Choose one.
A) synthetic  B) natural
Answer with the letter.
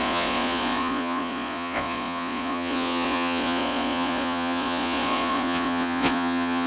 A